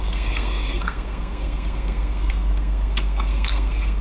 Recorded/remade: remade